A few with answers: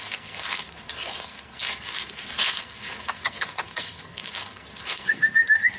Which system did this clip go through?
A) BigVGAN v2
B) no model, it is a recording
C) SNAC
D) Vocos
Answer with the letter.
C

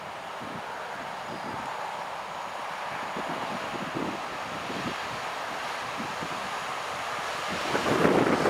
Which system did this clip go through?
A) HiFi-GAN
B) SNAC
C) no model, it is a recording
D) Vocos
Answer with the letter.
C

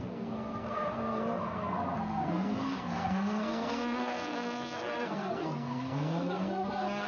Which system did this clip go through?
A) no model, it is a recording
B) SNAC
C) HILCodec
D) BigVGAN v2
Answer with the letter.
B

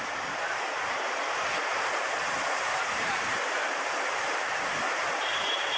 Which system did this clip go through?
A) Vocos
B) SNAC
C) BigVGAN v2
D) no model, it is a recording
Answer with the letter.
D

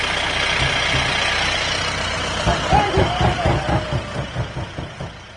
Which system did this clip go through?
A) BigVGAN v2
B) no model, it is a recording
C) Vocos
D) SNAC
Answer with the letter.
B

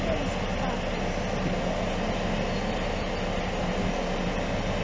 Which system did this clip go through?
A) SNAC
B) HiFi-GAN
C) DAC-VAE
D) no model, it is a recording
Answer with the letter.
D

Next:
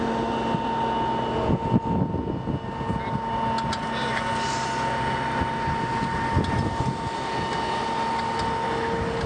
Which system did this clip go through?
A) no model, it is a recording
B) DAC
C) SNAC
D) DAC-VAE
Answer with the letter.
A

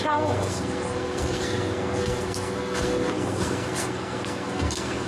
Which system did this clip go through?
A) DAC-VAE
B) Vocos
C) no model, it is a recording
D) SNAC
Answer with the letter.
D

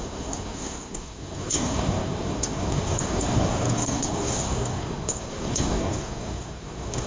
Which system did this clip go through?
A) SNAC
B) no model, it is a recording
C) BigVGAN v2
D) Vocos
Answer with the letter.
A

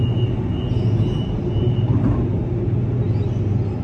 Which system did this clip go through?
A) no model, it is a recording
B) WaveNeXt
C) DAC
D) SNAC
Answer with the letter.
A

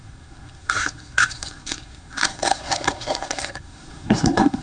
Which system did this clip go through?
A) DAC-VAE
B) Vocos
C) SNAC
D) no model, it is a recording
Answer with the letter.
C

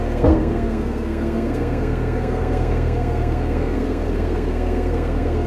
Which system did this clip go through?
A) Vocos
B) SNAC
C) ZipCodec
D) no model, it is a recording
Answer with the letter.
B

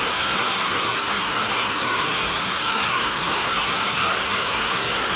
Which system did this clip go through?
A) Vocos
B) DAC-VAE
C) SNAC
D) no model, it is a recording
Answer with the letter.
C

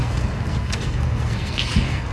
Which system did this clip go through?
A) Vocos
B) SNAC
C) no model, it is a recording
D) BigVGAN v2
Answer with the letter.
B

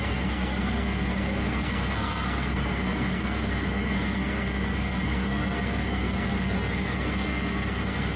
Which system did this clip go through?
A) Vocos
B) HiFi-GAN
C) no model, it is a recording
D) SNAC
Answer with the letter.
D